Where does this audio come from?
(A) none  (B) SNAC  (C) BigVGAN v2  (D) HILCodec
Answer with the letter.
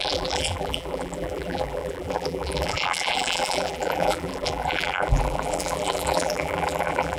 C